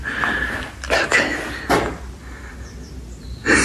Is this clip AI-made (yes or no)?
no